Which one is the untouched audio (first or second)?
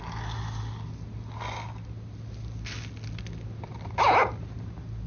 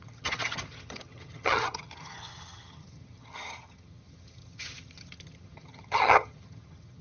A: first